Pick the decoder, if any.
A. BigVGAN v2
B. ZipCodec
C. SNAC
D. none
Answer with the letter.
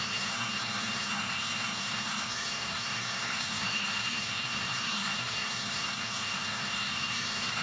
C